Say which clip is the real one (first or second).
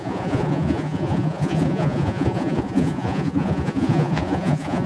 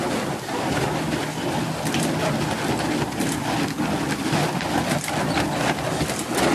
second